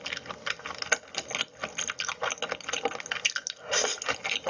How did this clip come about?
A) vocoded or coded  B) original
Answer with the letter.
B